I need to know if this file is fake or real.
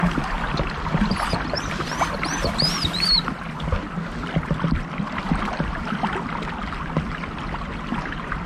real